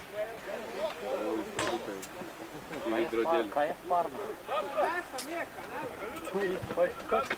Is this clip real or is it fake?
real